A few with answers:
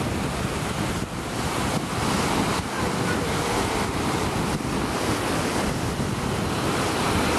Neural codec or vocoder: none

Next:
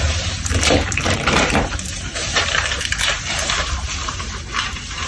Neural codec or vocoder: vocoder, BigVGAN v2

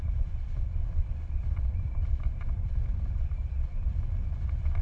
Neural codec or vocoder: vocoder, BigVGAN v2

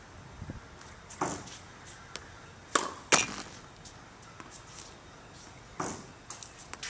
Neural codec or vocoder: none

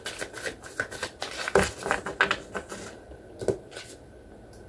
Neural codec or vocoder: none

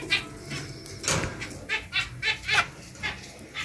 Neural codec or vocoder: none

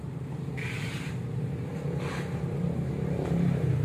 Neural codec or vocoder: vocoder, BigVGAN v2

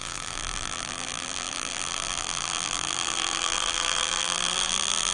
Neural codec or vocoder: vocoder, BigVGAN v2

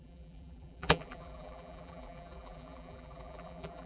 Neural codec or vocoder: vocoder, BigVGAN v2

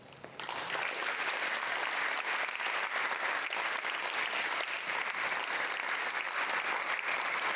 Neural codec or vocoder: vocoder, BigVGAN v2